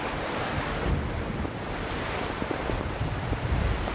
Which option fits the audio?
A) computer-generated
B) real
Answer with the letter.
B